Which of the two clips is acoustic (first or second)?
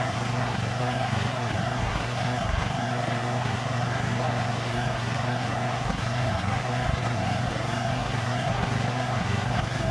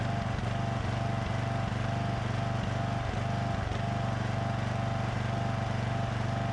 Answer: second